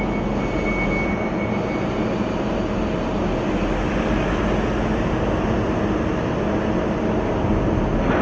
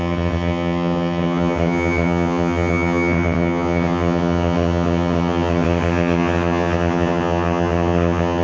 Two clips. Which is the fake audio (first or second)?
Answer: second